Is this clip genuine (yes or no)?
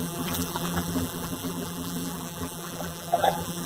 no